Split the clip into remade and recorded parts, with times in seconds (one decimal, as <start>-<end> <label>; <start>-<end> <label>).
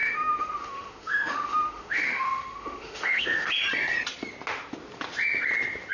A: 0.0-3.5 remade; 3.5-5.9 recorded